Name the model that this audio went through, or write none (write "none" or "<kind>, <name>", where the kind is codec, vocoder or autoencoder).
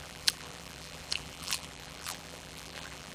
vocoder, BigVGAN v2